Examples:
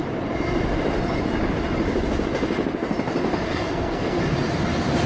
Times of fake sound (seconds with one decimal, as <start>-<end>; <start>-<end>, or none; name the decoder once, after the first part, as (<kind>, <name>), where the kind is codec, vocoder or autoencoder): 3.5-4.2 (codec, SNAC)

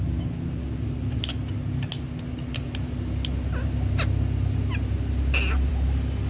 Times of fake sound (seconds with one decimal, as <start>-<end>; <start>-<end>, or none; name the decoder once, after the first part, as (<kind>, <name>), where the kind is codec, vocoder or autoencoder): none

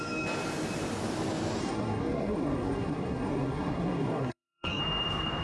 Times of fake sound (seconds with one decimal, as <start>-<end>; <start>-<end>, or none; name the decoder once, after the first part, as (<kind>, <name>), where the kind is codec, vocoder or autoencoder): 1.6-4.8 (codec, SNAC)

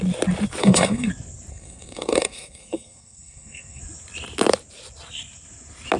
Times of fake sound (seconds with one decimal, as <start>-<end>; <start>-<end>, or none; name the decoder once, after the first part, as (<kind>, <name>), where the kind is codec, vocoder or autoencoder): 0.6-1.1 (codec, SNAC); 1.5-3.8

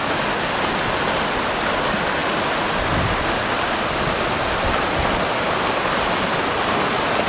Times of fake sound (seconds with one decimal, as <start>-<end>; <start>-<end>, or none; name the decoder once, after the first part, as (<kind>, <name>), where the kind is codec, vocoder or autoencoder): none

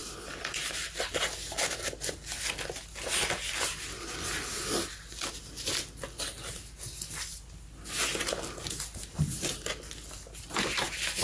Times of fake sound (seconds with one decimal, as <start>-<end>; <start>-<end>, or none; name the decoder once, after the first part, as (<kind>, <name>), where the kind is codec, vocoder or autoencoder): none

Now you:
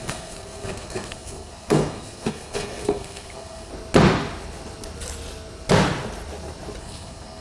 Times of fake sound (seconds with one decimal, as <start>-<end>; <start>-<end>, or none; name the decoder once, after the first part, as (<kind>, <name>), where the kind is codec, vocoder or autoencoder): 0.0-3.7 (codec, SNAC); 6.8-7.4

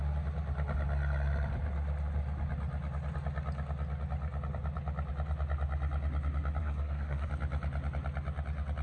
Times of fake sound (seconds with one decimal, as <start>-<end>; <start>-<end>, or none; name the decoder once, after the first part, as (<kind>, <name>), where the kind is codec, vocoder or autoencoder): 6.6-7.3 (codec, SNAC)